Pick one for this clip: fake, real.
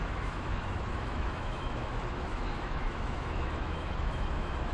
fake